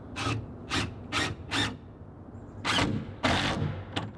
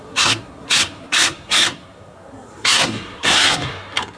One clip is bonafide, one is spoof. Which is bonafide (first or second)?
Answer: first